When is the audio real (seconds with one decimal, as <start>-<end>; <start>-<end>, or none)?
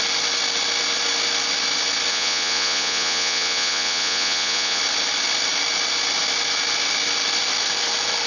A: 0.0-2.1; 4.8-8.3